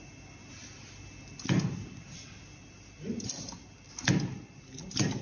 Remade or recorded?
recorded